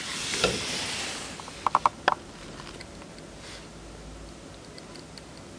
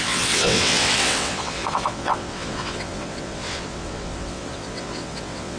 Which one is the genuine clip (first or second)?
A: first